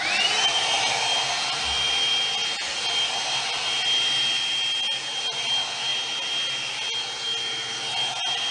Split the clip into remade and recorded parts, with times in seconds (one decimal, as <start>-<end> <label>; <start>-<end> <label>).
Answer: 0.0-8.5 recorded